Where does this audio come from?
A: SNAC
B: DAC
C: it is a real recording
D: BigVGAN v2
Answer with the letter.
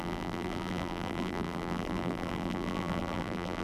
D